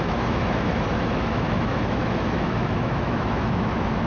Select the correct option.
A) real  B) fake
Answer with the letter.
B